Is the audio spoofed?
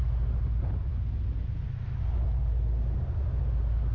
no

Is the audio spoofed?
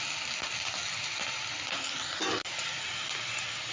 no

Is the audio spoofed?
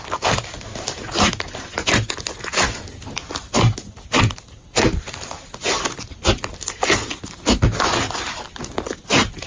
no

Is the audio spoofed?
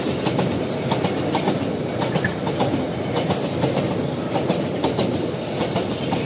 no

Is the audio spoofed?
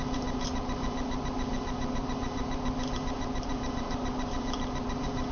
no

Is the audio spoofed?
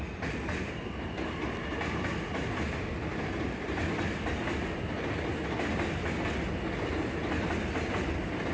no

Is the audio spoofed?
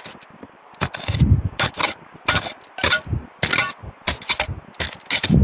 yes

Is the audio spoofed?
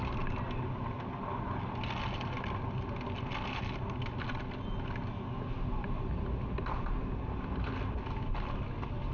no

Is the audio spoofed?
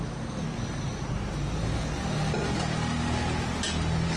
no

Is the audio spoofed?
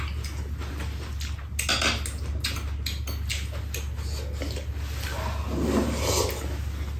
no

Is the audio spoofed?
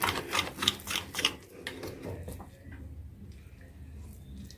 no